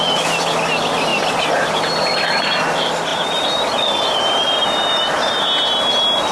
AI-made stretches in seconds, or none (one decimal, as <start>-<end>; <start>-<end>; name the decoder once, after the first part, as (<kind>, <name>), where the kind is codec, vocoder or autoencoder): none